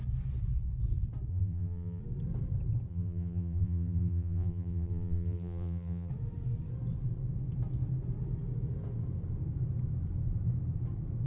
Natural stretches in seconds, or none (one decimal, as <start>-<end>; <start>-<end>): 0.0-1.3; 2.0-2.9; 6.1-11.3